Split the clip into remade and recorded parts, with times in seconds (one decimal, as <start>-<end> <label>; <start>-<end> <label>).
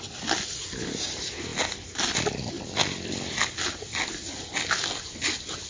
0.0-5.7 recorded